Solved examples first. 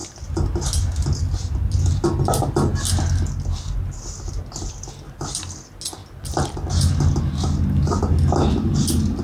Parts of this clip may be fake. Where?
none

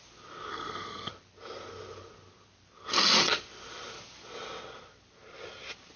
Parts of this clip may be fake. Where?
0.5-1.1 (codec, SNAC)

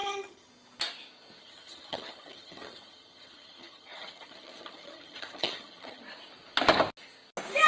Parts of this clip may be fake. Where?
0.0-0.5 (vocoder, HiFi-GAN); 1.4-6.0